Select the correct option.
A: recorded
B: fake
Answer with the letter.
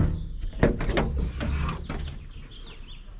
A